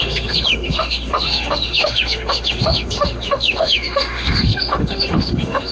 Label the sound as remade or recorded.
remade